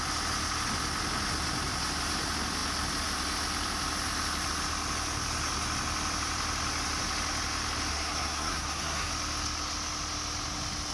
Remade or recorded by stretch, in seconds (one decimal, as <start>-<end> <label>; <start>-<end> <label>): 0.0-7.9 recorded; 7.9-9.1 remade; 9.1-10.9 recorded